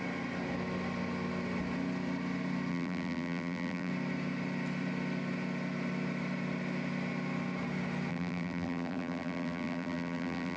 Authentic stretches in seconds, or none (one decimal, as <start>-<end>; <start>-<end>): 0.0-2.7; 3.9-8.1